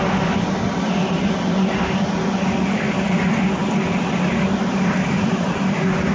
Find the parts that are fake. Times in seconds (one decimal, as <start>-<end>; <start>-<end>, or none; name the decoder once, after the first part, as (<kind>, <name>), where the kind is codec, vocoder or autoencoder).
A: none